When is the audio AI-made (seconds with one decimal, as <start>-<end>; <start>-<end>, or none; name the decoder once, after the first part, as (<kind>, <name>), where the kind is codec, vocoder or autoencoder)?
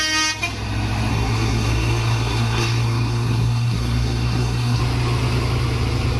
1.1-4.8 (codec, SNAC)